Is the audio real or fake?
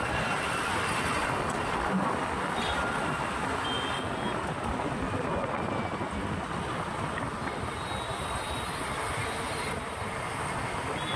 real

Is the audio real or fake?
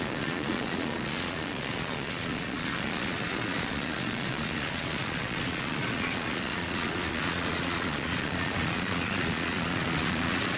fake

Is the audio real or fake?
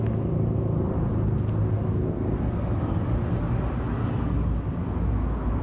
real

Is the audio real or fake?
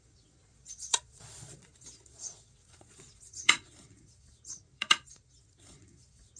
fake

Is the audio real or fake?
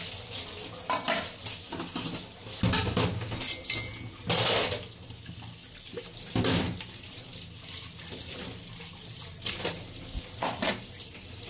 real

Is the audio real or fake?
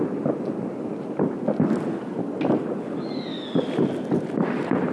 real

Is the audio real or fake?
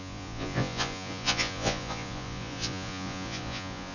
fake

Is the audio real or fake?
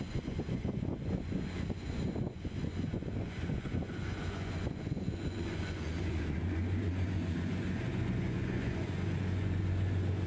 fake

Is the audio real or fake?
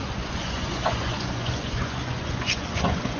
fake